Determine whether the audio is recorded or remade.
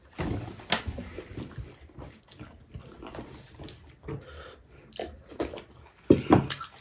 recorded